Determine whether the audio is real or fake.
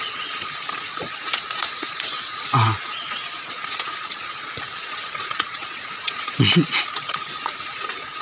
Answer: fake